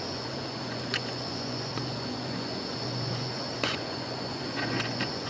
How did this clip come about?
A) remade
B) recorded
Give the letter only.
A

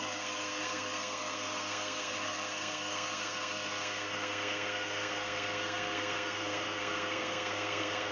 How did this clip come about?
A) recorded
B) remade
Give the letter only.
B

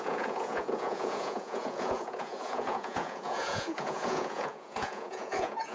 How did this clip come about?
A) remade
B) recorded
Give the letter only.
A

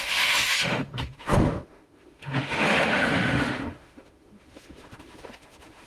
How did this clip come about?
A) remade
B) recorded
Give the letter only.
A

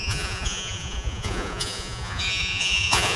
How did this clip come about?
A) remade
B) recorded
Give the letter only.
A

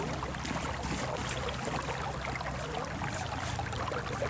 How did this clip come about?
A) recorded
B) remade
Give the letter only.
A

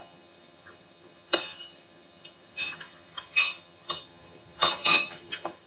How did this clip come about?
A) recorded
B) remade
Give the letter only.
B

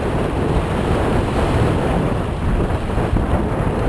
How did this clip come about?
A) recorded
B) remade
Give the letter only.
B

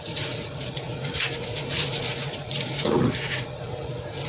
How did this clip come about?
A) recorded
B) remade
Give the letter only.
B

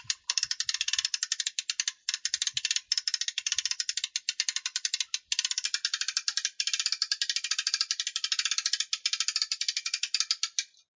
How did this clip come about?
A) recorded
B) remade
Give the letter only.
A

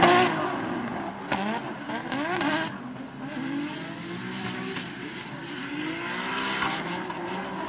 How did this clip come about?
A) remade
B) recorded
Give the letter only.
B